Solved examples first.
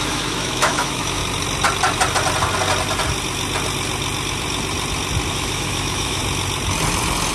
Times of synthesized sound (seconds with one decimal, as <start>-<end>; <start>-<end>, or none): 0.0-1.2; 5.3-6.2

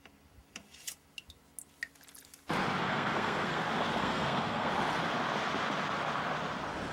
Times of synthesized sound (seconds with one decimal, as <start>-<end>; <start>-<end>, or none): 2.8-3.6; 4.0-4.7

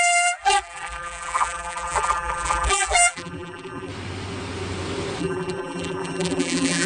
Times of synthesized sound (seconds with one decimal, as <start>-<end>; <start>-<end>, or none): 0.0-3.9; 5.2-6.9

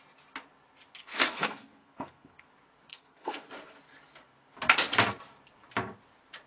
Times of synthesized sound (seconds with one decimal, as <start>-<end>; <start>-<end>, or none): 1.0-2.5; 2.9-3.5